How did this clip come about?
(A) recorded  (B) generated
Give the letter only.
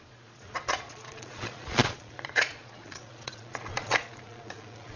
B